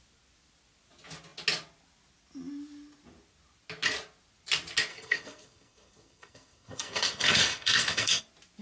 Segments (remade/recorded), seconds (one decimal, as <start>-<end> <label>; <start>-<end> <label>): 0.0-4.9 recorded; 4.9-8.2 remade; 8.2-8.6 recorded

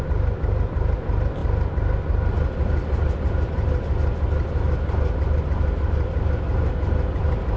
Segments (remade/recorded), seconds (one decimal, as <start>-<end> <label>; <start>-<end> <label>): 0.0-7.6 recorded

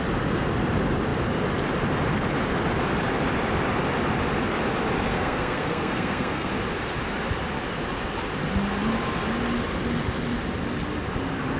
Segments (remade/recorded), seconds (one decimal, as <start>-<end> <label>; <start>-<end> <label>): 0.0-5.1 recorded; 5.1-6.5 remade; 6.5-11.6 recorded

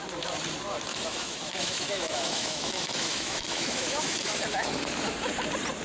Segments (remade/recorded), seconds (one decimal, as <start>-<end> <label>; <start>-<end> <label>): 0.0-0.9 recorded; 0.9-4.4 remade; 4.4-5.8 recorded

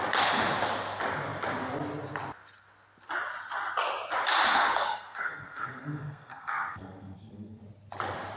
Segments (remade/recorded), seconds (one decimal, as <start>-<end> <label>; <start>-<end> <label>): 0.0-4.5 recorded; 4.5-7.6 remade; 7.6-8.4 recorded

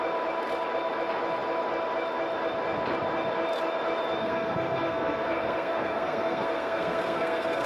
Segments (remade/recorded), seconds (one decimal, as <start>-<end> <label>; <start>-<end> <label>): 0.0-4.2 recorded; 4.2-7.7 remade

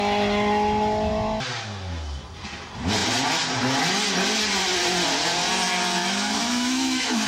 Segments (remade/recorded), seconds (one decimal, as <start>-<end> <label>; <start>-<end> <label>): 0.0-6.0 recorded; 6.0-7.3 remade